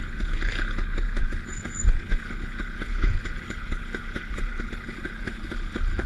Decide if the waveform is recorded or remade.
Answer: remade